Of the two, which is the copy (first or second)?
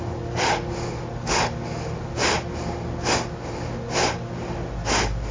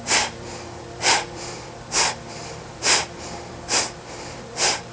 second